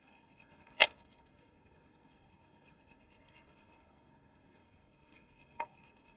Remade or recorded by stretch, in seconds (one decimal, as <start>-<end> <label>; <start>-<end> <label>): 0.0-6.2 remade